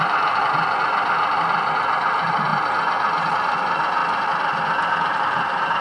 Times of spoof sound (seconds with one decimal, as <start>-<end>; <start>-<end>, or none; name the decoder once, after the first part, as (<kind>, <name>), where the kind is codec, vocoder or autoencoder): 0.0-0.4 (vocoder, BigVGAN v2); 1.1-4.0; 4.9-5.8